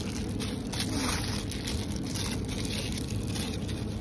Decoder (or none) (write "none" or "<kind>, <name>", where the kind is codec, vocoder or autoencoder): none